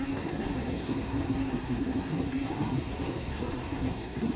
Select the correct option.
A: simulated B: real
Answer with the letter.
A